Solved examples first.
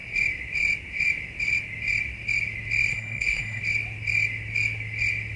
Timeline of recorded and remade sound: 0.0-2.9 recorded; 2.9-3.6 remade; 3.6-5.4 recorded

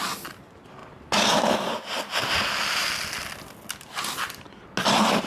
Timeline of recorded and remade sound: 0.0-5.3 recorded

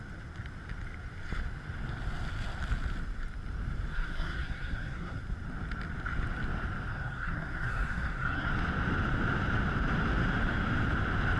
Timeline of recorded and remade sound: 0.0-3.9 recorded; 3.9-5.2 remade; 5.2-6.9 recorded; 6.9-8.5 remade; 8.5-11.4 recorded

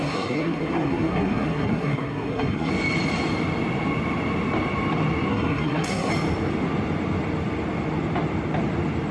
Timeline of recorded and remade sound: 0.0-2.7 remade; 2.7-5.3 recorded; 5.3-6.1 remade; 6.1-9.1 recorded

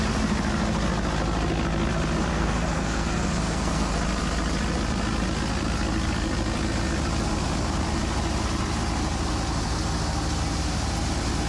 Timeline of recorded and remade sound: 0.0-2.3 recorded; 2.3-3.9 remade; 3.9-11.5 recorded

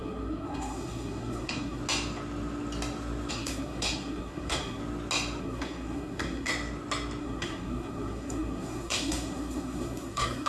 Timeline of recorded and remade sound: 0.0-1.8 remade; 1.8-3.3 recorded; 3.3-4.8 remade; 4.8-5.4 recorded; 5.4-6.5 remade; 6.5-7.2 recorded; 7.2-10.5 remade